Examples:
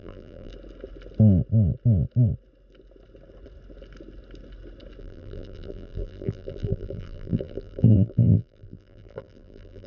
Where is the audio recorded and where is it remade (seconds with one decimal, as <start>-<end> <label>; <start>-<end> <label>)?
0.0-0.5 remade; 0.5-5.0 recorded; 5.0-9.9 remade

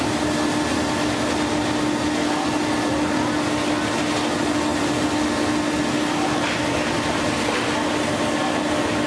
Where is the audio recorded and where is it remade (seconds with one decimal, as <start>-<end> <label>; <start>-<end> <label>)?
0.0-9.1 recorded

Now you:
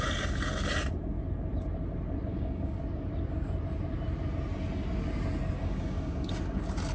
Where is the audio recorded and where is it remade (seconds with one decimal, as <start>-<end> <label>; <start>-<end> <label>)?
0.0-2.3 recorded; 2.3-2.8 remade; 2.8-5.6 recorded; 5.6-6.3 remade; 6.3-6.9 recorded